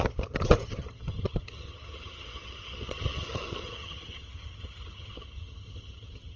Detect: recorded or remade remade